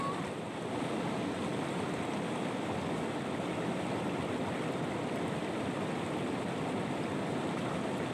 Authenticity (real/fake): real